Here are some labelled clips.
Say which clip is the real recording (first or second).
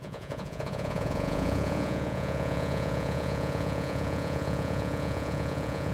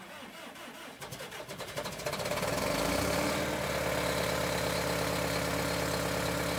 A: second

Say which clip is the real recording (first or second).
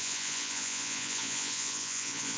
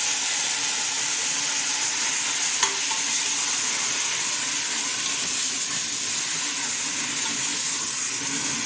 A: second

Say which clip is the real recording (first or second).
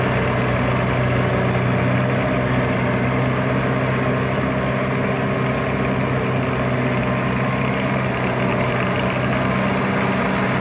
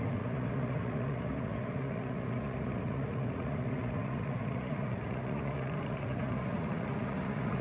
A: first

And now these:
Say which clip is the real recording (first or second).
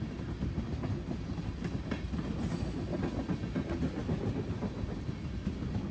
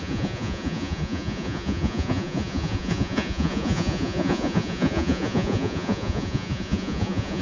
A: first